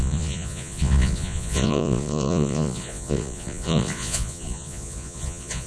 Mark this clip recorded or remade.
remade